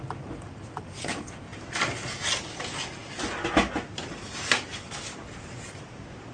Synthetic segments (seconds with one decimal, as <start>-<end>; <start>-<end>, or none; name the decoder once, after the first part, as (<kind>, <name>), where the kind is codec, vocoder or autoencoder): none